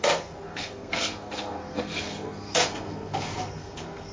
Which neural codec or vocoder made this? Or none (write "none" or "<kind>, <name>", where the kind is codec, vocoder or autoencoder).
codec, SNAC